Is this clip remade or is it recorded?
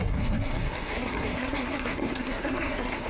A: remade